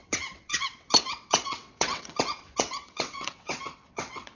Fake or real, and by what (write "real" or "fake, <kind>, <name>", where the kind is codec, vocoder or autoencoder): fake, vocoder, WaveNeXt